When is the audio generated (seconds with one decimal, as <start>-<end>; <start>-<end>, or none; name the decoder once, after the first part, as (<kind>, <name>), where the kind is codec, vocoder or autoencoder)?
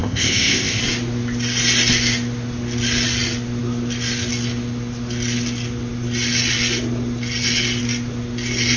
0.0-0.8 (codec, ZipCodec)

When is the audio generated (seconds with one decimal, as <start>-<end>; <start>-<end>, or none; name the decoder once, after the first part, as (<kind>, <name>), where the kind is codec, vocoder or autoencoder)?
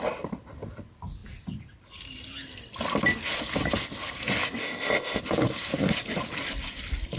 4.6-5.2 (codec, ZipCodec)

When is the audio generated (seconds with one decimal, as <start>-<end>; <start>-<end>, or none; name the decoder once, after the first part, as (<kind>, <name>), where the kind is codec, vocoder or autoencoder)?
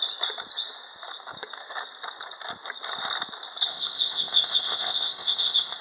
3.7-5.8 (codec, ZipCodec)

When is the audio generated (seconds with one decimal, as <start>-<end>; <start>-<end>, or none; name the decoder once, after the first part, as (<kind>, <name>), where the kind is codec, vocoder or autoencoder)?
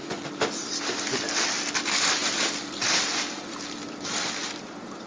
none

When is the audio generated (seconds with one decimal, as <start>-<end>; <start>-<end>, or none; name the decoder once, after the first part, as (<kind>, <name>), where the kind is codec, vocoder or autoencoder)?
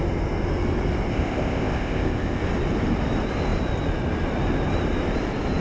1.1-2.4 (codec, ZipCodec)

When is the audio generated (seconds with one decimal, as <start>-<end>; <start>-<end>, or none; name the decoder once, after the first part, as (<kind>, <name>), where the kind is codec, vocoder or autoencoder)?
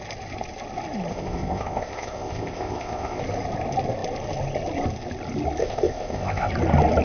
1.1-3.2 (codec, ZipCodec); 5.6-6.5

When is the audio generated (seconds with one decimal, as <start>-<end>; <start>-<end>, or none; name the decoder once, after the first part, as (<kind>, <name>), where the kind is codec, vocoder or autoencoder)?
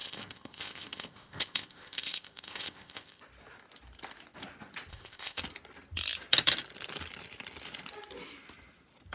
0.0-3.2 (codec, ZipCodec); 4.9-5.4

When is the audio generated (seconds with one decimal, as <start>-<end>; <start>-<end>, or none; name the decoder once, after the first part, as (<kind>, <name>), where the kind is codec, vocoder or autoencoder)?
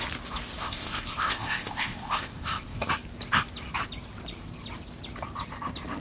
0.6-2.9 (codec, ZipCodec)